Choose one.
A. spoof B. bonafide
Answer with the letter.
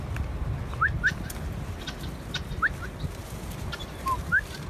B